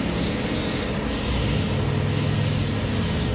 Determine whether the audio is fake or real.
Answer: real